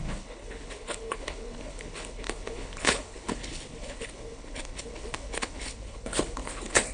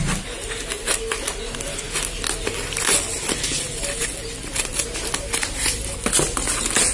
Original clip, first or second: second